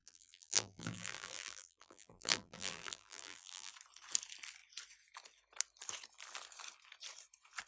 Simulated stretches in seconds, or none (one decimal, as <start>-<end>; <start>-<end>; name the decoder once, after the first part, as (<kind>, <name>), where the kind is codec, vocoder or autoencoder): 0.0-3.7 (vocoder, BigVGAN v2)